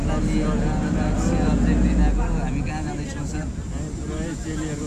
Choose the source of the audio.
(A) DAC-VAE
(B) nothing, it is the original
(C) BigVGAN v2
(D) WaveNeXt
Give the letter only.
B